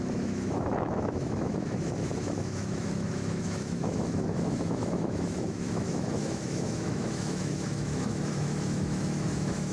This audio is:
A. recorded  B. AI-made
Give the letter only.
B